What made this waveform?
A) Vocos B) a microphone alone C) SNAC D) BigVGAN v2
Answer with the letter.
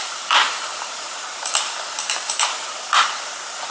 D